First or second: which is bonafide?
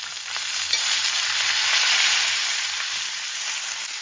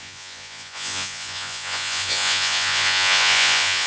first